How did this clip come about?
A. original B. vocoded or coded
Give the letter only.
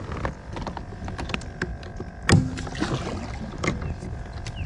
A